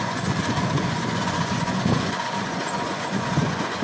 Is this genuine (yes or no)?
no